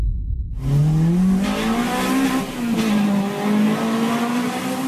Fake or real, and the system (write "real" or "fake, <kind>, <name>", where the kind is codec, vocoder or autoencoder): real